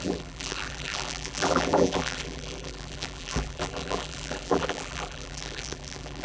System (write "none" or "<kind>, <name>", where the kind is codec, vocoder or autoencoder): vocoder, BigVGAN v2